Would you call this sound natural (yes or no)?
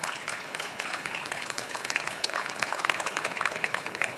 no